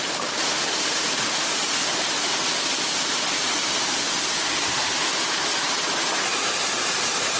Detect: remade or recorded recorded